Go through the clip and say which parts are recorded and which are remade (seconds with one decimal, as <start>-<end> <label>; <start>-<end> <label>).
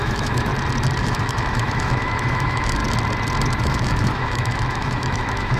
0.0-0.5 remade; 0.5-1.0 recorded; 1.0-2.8 remade; 2.8-3.6 recorded; 3.6-5.6 remade